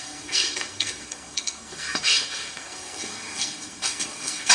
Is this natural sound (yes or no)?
no